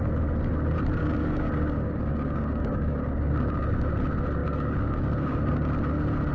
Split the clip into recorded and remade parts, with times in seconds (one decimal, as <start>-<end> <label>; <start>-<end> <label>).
0.0-1.0 recorded; 1.0-3.9 remade; 3.9-4.4 recorded; 4.4-5.7 remade; 5.7-6.3 recorded